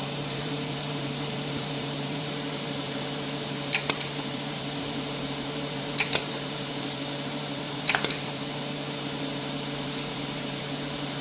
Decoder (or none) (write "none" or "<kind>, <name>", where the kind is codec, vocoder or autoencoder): vocoder, BigVGAN v2